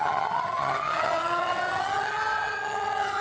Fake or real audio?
fake